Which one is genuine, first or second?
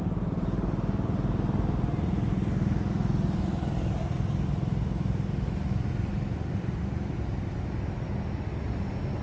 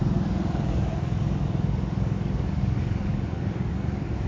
first